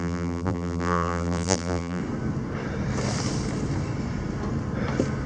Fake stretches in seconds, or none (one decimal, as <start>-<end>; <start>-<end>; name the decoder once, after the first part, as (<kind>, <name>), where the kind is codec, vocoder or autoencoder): 0.0-2.0 (vocoder, BigVGAN v2)

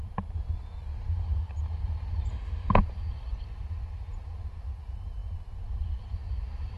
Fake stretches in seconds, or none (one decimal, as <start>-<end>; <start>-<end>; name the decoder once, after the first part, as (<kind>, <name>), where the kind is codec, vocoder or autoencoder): 2.3-2.8 (autoencoder, DAC-VAE)

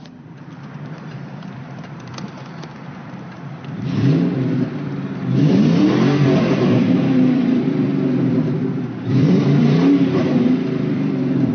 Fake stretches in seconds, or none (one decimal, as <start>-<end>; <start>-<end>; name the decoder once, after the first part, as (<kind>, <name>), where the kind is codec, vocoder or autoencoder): 0.0-7.9 (vocoder, BigVGAN v2); 9.1-11.5